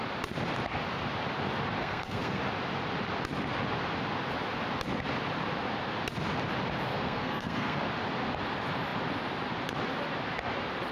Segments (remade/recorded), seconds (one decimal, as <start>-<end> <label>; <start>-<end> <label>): 0.0-1.8 recorded; 1.8-2.4 remade; 2.4-6.9 recorded; 6.9-7.8 remade; 7.8-10.9 recorded